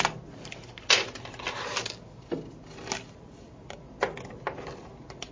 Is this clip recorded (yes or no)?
yes